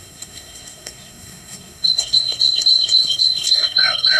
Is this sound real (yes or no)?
no